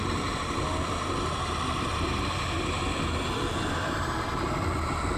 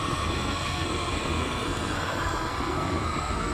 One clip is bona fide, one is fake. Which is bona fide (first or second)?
first